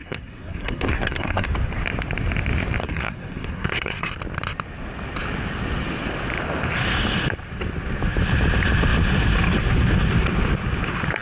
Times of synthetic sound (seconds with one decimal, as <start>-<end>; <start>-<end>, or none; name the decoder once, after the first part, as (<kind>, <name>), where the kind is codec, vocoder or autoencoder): 0.0-1.5 (codec, SNAC); 2.8-4.1